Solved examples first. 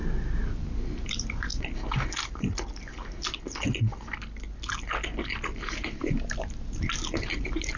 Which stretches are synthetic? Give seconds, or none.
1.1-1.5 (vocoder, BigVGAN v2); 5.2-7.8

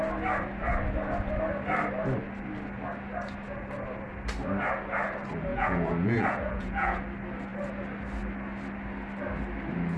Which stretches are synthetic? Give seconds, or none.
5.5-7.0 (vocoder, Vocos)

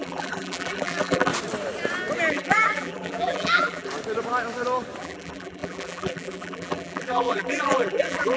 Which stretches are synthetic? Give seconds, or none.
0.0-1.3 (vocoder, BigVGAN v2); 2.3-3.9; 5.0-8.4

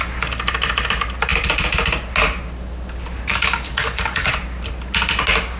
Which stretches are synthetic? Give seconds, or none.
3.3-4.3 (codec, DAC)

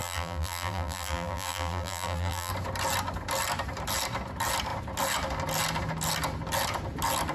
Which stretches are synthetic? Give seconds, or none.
0.0-2.5 (vocoder, BigVGAN v2)

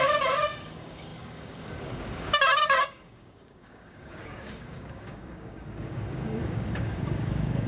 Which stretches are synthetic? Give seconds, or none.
0.0-7.7 (codec, DAC)